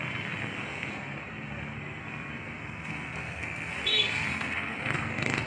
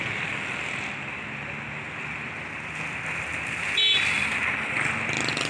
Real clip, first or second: second